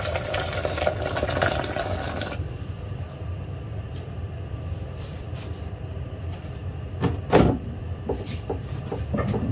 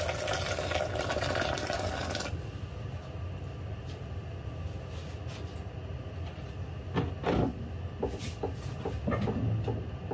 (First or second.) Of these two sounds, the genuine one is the second